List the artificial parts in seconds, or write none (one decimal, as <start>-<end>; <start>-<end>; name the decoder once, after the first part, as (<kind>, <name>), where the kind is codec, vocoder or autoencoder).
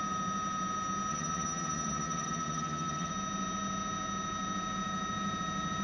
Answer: 1.1-3.1 (vocoder, HiFi-GAN)